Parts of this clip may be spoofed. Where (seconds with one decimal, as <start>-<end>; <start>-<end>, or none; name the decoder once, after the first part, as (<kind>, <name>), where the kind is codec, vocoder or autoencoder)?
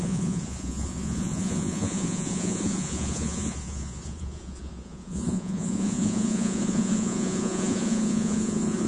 0.0-8.9 (vocoder, Vocos)